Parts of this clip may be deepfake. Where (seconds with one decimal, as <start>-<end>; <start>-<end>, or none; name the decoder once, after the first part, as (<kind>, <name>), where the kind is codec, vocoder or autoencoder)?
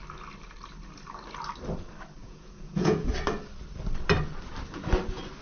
2.2-3.1 (vocoder, Vocos)